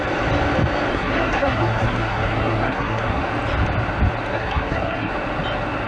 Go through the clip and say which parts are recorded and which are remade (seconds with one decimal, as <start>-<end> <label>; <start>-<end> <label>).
0.0-0.9 recorded; 0.9-3.3 remade; 3.3-4.3 recorded; 4.3-5.1 remade; 5.1-5.9 recorded